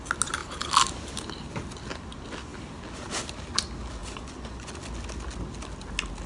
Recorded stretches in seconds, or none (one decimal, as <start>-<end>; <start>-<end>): 0.0-4.0; 4.7-6.3